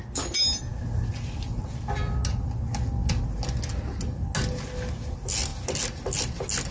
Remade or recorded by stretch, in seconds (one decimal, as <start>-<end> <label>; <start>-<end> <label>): 0.0-6.7 recorded